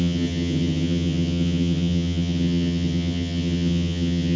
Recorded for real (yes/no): no